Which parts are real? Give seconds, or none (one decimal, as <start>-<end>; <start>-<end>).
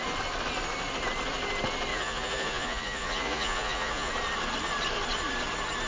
0.0-1.9; 4.1-5.9